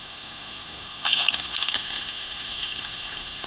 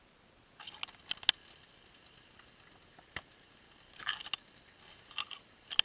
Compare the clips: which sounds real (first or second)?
second